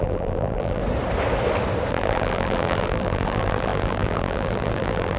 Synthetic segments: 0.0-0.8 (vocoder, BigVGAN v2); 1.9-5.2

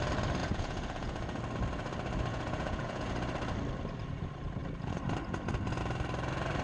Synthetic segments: 0.4-1.4 (vocoder, Vocos); 2.3-3.1

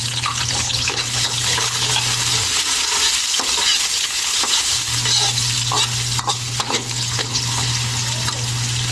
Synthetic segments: 0.0-1.9 (codec, HILCodec); 3.9-4.9; 6.3-7.7

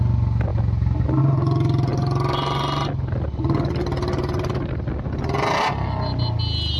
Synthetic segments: none

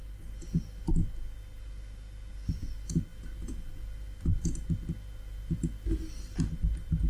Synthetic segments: none

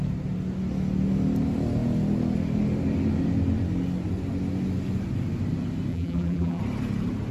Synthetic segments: 5.9-6.6 (vocoder, BigVGAN v2)

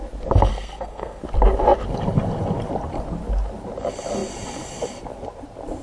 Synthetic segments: 0.5-1.2 (codec, SNAC)